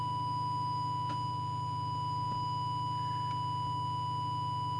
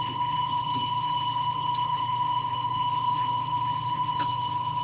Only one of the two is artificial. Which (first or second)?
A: second